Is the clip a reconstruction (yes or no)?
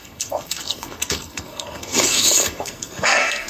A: yes